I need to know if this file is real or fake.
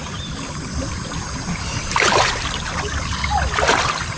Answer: real